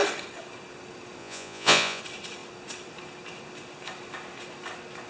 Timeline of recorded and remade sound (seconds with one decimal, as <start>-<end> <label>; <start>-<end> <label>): 0.0-1.2 recorded; 1.2-2.0 remade; 2.0-5.1 recorded